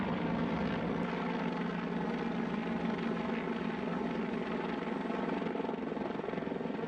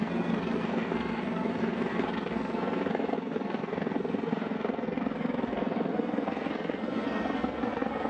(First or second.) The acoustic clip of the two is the first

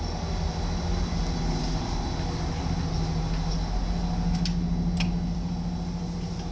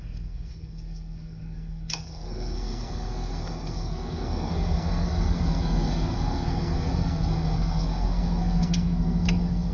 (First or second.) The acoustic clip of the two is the first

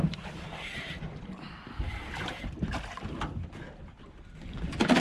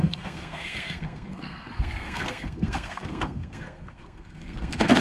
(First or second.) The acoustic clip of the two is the first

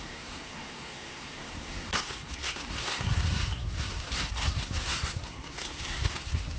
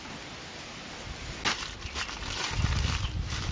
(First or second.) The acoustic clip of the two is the second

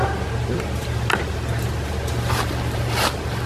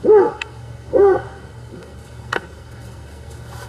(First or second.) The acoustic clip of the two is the first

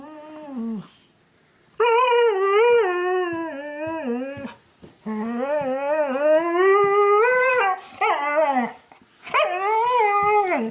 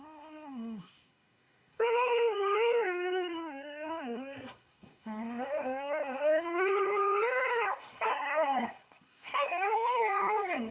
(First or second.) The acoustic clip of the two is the first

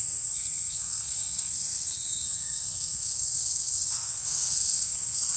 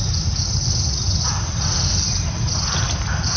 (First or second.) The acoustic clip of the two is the second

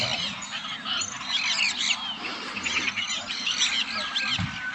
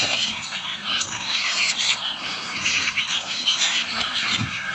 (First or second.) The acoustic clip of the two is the first